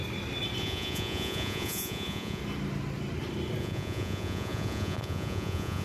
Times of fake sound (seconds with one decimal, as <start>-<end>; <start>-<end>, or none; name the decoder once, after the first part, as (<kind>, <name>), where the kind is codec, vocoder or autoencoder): 0.6-2.4 (vocoder, Vocos); 3.6-5.8